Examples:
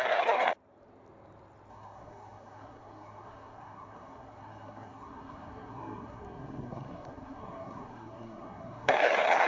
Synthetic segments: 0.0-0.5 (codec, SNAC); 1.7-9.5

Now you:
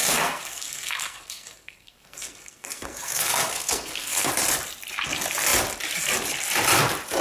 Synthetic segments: 0.0-4.3 (codec, SNAC)

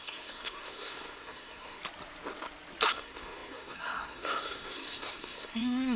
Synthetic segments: 0.0-1.8 (codec, SNAC); 2.9-6.0

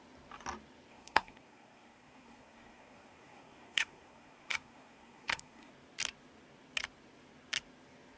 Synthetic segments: 0.9-5.7 (codec, SNAC)

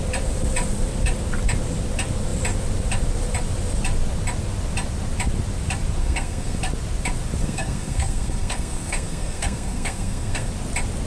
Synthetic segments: 6.0-6.6 (codec, SNAC); 7.4-10.5